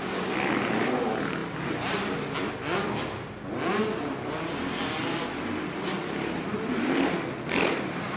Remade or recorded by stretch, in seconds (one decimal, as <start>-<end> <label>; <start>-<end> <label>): 0.0-8.2 recorded